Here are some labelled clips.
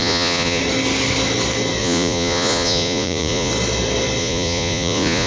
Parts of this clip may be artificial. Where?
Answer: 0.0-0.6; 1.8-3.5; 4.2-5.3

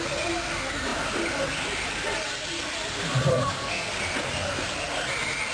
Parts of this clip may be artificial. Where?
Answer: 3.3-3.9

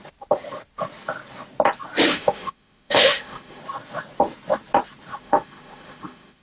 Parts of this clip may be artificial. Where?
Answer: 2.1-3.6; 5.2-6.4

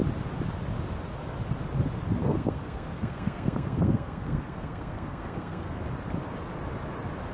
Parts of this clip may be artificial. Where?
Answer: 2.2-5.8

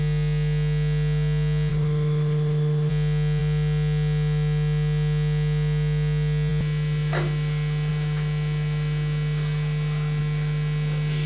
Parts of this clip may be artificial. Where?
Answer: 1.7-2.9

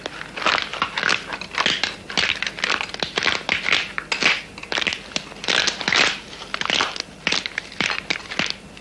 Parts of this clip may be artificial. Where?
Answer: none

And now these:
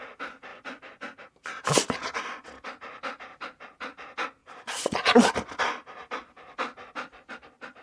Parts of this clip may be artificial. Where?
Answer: 4.4-5.3